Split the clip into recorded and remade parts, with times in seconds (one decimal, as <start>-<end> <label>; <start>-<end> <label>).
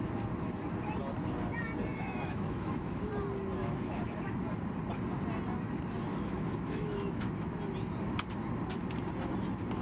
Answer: 0.0-1.9 recorded; 1.9-3.1 remade; 3.1-3.6 recorded; 3.6-4.4 remade; 4.4-6.1 recorded; 6.1-7.3 remade; 7.3-9.8 recorded